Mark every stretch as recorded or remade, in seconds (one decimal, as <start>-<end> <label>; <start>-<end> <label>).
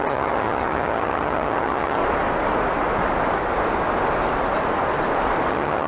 0.0-2.0 remade; 2.0-5.5 recorded; 5.5-5.9 remade